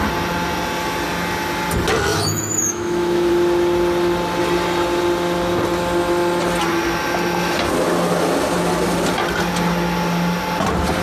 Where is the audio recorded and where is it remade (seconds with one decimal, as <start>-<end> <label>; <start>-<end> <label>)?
0.0-2.1 recorded; 2.1-3.3 remade; 3.3-11.0 recorded